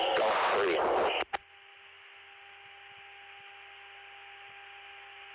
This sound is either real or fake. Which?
real